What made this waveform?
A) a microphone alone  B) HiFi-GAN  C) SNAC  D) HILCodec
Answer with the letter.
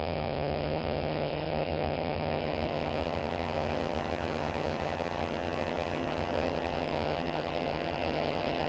B